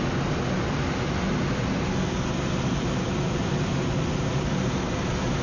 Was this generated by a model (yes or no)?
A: no